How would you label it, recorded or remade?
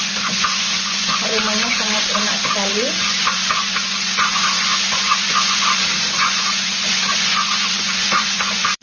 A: remade